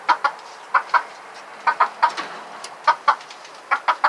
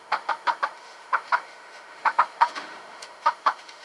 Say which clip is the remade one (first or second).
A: second